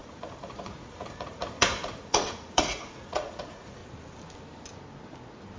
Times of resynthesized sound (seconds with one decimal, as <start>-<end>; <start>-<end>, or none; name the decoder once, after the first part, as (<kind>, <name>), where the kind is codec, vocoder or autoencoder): 0.0-3.8 (vocoder, Vocos)